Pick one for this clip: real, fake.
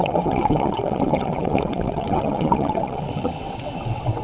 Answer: fake